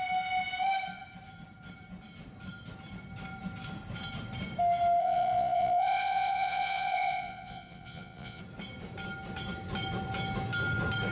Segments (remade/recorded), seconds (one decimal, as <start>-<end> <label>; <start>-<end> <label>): 0.0-5.0 recorded; 5.0-8.4 remade; 8.4-11.1 recorded